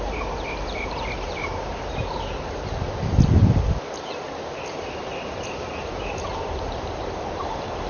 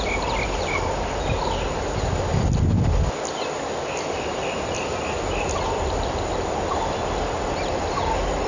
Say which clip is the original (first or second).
second